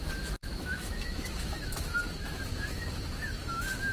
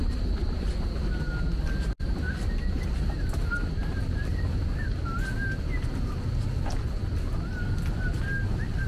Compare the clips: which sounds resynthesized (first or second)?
first